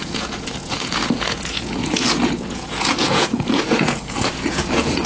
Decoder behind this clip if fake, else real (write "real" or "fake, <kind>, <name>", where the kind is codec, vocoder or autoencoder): fake, vocoder, Vocos